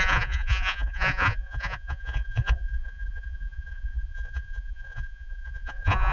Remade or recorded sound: remade